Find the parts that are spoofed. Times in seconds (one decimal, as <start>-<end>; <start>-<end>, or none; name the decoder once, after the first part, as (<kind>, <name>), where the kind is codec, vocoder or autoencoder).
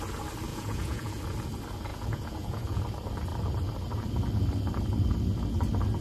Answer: 0.5-1.2 (vocoder, Vocos); 1.9-2.8